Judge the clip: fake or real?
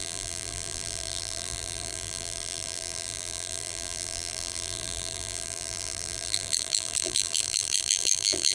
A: fake